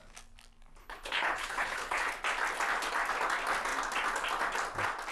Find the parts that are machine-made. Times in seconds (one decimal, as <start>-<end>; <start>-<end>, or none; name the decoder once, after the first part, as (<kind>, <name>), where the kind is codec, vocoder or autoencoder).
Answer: 0.8-2.1 (codec, HILCodec)